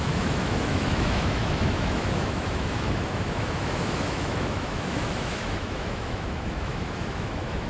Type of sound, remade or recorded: remade